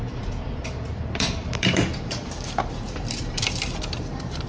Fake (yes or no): yes